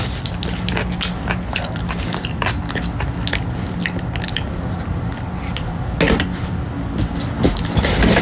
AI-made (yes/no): no